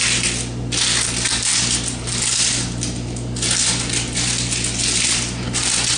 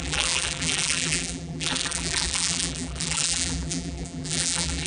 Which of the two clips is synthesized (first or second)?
second